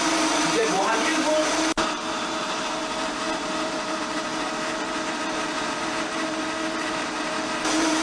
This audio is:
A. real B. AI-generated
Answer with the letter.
B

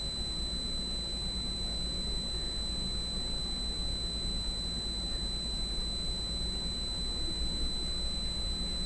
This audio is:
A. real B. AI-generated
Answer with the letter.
A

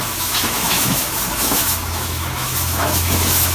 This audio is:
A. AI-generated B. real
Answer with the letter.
A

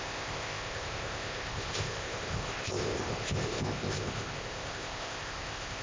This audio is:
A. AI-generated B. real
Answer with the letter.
A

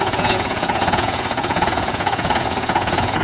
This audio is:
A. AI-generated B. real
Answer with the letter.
A